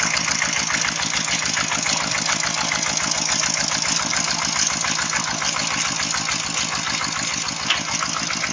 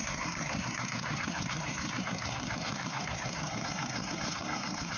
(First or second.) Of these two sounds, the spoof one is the second